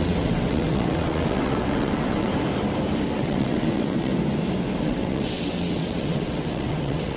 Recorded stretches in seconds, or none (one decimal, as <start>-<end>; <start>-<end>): 2.3-3.1; 4.1-4.8